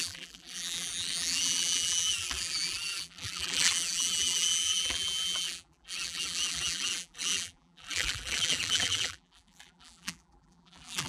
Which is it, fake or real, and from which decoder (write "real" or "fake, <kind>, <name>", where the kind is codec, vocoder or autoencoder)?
fake, vocoder, BigVGAN v2